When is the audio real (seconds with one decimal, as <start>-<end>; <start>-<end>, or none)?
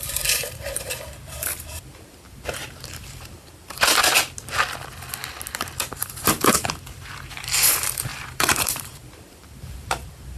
4.0-6.1